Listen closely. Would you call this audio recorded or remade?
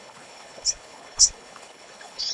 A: remade